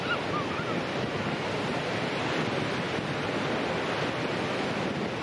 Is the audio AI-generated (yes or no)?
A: no